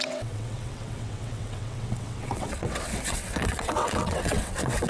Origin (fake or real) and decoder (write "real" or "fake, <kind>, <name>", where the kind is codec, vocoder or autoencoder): fake, vocoder, WaveNeXt